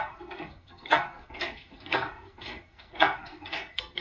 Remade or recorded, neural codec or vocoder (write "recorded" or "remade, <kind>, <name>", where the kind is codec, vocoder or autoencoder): remade, codec, SNAC